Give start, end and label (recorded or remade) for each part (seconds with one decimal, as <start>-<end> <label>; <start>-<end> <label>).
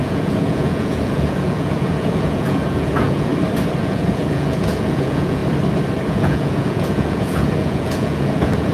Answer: 0.0-3.3 remade; 3.3-3.8 recorded; 3.8-5.4 remade; 5.4-6.1 recorded; 6.1-8.7 remade